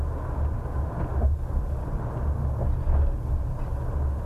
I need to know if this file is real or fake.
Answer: real